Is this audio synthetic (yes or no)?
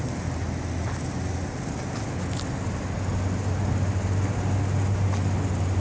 no